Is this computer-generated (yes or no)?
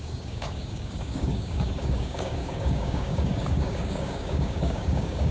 yes